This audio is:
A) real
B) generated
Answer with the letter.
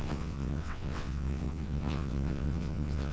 B